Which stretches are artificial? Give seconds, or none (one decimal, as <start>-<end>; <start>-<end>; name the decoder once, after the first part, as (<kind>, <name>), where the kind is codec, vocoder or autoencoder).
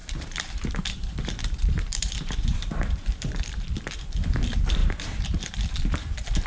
0.0-3.9 (vocoder, BigVGAN v2); 4.8-6.5